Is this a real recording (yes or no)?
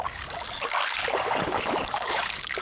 no